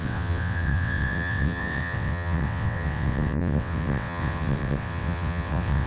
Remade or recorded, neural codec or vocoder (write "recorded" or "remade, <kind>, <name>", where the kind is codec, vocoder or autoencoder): remade, vocoder, WaveNeXt